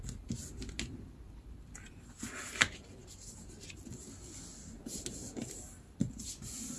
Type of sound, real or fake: real